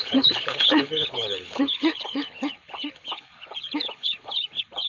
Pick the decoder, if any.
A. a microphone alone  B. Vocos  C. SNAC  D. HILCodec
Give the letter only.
D